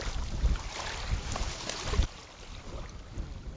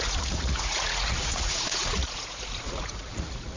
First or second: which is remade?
second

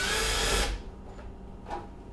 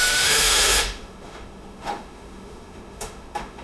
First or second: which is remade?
second